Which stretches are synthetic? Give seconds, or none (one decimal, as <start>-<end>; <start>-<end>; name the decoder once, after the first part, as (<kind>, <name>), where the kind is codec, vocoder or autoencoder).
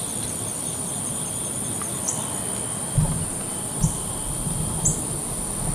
none